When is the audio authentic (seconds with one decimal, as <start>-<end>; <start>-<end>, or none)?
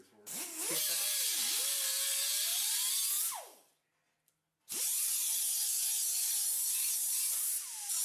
0.0-8.0